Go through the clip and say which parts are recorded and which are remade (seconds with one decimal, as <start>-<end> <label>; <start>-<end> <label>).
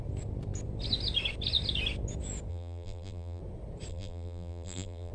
0.0-2.5 recorded; 2.5-3.4 remade; 3.4-3.9 recorded; 3.9-5.1 remade